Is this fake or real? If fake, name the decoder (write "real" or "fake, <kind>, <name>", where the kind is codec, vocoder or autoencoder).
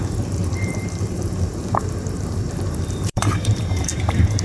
fake, vocoder, BigVGAN v2